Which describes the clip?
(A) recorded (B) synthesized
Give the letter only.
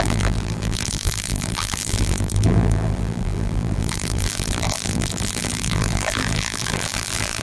B